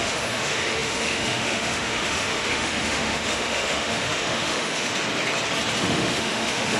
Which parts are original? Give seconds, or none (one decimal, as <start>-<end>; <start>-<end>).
4.9-5.8